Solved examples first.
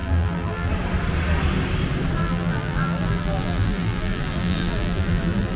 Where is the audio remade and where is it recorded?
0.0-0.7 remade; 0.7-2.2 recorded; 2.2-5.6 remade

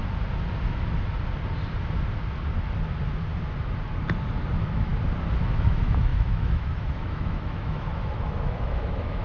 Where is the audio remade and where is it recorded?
0.0-4.5 recorded; 4.5-4.9 remade; 4.9-5.4 recorded; 5.4-9.2 remade

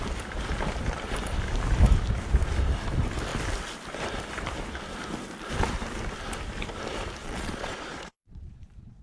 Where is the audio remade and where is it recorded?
0.0-7.2 recorded; 7.2-9.0 remade

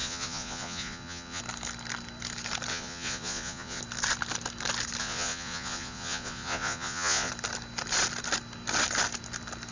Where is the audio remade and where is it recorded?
0.0-1.4 remade; 1.4-2.7 recorded; 2.7-3.8 remade; 3.8-5.0 recorded; 5.0-7.3 remade; 7.3-9.7 recorded

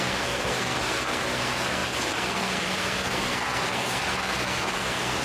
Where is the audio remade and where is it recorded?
0.0-5.2 remade